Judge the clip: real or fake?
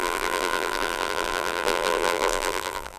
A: fake